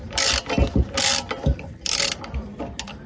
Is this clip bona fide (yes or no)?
yes